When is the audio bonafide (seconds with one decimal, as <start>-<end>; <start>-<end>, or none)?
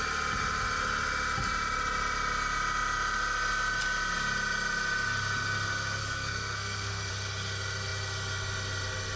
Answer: 0.0-6.0; 7.1-9.2